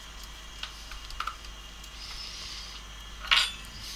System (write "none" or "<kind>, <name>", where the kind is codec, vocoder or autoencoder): none